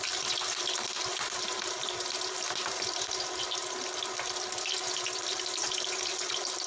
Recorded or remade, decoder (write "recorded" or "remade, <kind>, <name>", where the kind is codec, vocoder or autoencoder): recorded